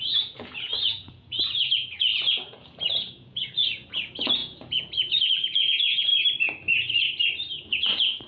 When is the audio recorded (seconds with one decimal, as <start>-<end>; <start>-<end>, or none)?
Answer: 6.1-7.5